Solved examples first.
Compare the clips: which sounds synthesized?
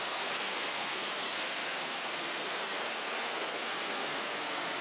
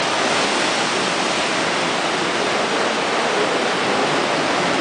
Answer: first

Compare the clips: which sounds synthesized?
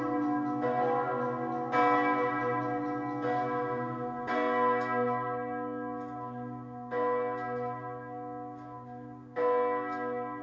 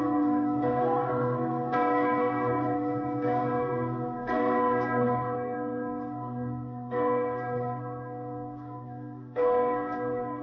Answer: second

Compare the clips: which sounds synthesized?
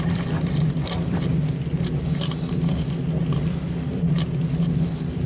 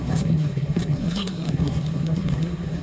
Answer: second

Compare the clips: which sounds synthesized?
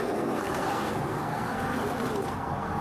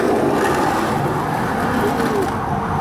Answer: first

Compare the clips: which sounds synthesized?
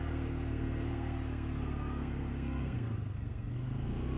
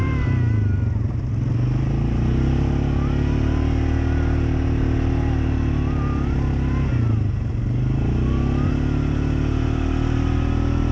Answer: first